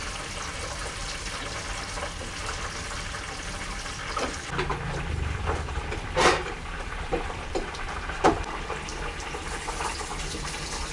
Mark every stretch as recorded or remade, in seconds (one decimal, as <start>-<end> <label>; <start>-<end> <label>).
0.0-10.9 recorded